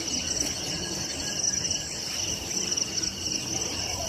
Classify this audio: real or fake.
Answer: real